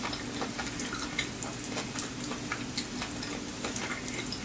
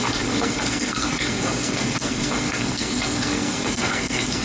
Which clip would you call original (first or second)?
first